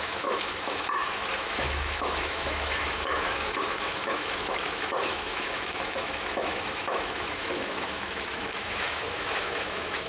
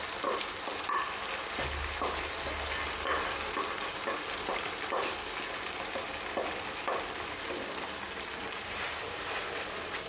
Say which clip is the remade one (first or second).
first